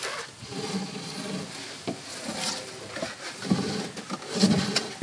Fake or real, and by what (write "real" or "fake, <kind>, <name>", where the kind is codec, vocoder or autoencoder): real